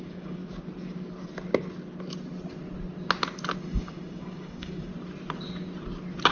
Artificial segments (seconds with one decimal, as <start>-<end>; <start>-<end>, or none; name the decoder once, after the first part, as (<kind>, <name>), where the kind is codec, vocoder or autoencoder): 0.0-0.4 (codec, DAC); 3.6-4.9